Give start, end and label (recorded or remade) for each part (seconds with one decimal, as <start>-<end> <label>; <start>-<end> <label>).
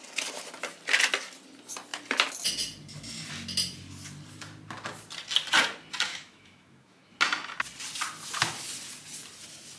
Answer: 0.0-6.1 recorded; 6.1-7.1 remade; 7.1-9.8 recorded